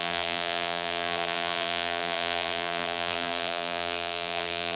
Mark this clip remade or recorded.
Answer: remade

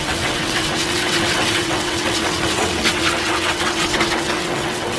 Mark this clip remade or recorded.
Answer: remade